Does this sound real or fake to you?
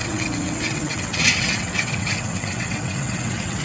fake